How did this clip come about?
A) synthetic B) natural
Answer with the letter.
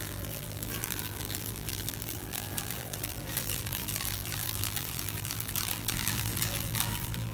A